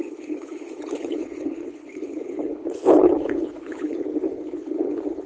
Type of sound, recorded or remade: remade